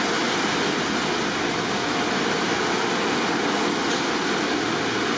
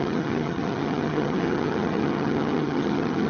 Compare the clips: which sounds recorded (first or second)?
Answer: first